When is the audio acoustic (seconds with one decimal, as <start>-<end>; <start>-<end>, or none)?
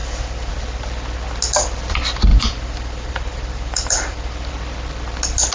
0.5-2.3; 4.5-5.5